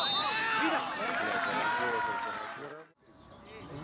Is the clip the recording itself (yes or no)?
yes